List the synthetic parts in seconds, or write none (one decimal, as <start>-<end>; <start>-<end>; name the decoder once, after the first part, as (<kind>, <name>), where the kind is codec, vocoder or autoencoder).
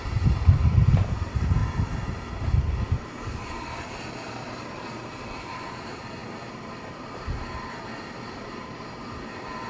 0.0-1.6 (vocoder, BigVGAN v2); 2.9-9.7